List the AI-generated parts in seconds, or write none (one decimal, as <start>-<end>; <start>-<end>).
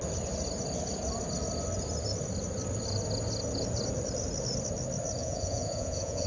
5.2-6.3